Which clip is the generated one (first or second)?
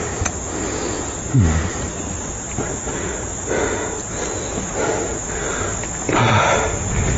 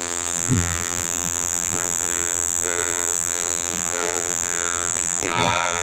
second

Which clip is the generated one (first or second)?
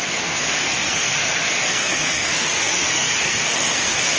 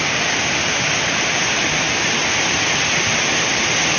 first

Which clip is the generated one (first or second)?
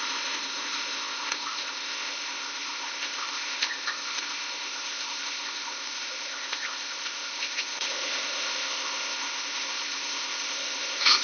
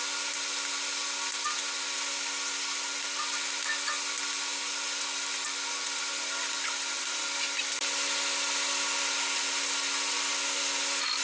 first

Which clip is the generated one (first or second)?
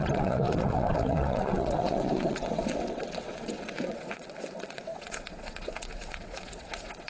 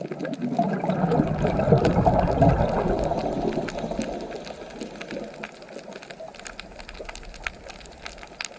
first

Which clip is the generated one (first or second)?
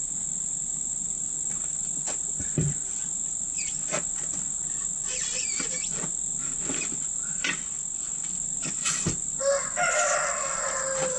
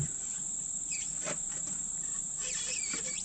second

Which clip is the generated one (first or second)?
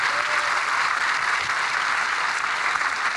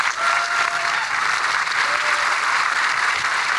second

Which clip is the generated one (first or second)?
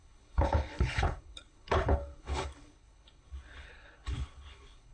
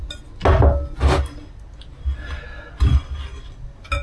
first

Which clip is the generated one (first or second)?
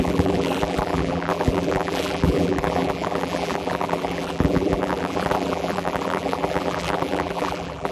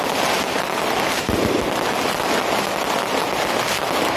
first